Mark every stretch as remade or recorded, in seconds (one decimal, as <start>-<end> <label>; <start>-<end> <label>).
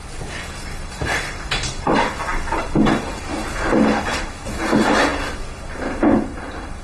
0.0-1.5 remade; 1.5-3.4 recorded; 3.4-4.2 remade; 4.2-6.8 recorded